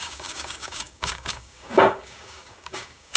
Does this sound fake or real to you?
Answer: fake